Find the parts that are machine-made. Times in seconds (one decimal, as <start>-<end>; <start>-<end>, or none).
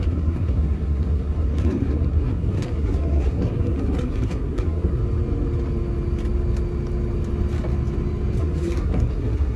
0.0-5.0; 8.4-9.6